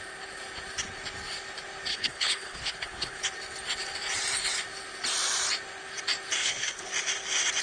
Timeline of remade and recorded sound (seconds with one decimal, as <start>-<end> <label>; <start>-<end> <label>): 0.0-1.9 recorded; 1.9-3.2 remade; 3.2-6.4 recorded; 6.4-6.9 remade; 6.9-7.6 recorded